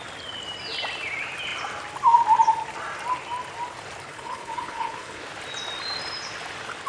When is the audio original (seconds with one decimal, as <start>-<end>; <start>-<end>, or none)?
0.0-4.1; 5.2-6.9